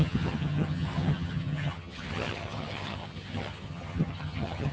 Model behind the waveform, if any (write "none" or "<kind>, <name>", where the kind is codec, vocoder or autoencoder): vocoder, HiFi-GAN